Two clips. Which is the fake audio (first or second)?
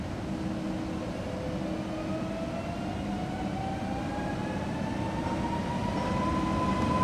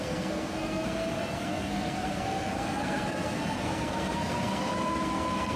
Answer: second